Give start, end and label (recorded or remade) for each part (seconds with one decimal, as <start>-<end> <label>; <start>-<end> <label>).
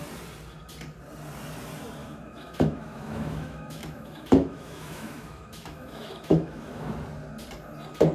0.0-2.0 recorded; 2.0-6.9 remade; 6.9-8.1 recorded